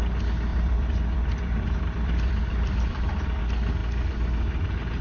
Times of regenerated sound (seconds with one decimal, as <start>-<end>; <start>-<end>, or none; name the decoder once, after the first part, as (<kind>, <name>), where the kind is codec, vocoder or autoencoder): 0.5-3.4 (vocoder, BigVGAN v2)